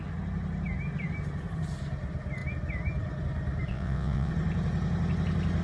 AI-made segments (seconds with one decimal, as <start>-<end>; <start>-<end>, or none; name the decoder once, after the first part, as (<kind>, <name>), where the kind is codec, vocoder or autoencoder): 3.7-4.3 (vocoder, WaveNeXt)